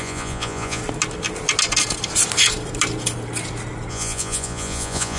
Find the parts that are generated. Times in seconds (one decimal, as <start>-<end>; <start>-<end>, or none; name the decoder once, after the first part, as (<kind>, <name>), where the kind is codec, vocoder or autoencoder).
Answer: 0.0-0.8 (vocoder, Vocos); 3.9-5.2